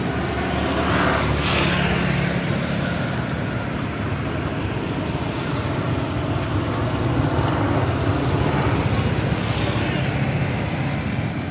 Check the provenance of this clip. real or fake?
real